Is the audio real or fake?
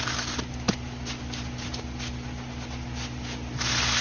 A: real